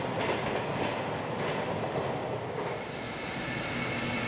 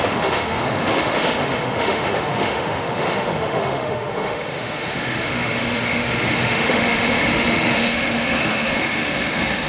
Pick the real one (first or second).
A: first